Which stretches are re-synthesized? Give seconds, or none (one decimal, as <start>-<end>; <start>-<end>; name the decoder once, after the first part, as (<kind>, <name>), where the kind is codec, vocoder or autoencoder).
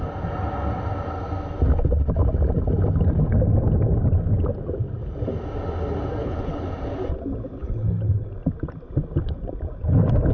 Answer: 6.2-6.7 (codec, HILCodec); 7.6-8.3